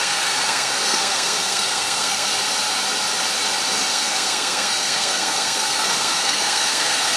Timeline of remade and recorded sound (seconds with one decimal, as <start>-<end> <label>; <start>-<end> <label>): 0.0-2.3 remade; 2.3-3.9 recorded; 3.9-7.2 remade